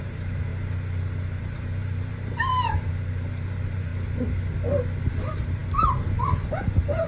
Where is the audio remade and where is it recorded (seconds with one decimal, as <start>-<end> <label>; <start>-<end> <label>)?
0.0-0.5 remade; 0.5-1.4 recorded; 1.4-3.9 remade; 3.9-5.0 recorded; 5.0-7.1 remade